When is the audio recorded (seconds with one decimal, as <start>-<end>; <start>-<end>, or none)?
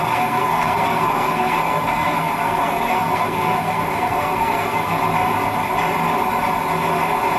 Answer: 5.0-7.4